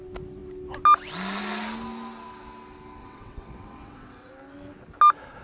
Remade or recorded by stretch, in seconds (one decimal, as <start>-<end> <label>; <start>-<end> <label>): 0.0-3.0 recorded; 3.0-4.3 remade; 4.3-5.4 recorded